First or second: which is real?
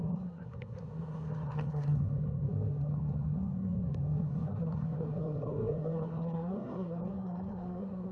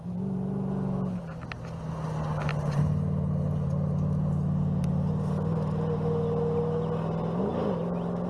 second